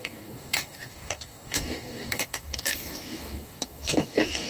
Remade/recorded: remade